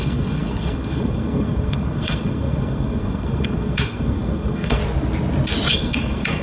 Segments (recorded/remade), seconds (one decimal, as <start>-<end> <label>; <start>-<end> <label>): 0.0-4.8 remade; 4.8-5.7 recorded; 5.7-6.4 remade